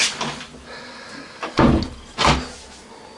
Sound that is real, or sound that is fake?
real